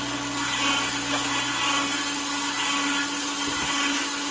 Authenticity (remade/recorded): recorded